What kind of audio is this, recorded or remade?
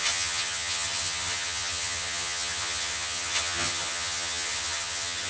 remade